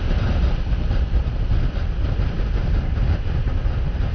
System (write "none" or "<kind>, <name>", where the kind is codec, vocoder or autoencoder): none